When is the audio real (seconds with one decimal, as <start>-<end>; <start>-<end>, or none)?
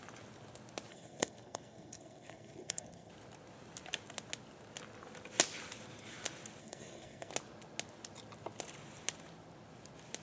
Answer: 0.0-0.9; 3.1-6.6; 7.3-10.2